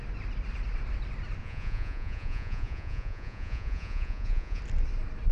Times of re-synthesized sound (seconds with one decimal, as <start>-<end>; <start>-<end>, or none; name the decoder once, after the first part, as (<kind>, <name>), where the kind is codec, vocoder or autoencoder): 1.4-4.6 (vocoder, Vocos)